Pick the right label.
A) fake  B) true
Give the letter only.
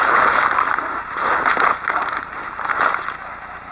B